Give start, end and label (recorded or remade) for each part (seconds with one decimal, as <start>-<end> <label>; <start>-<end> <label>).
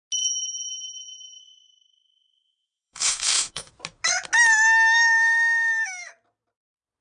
0.0-1.4 recorded; 1.4-3.7 remade; 3.7-4.5 recorded; 4.5-6.1 remade; 6.1-7.0 recorded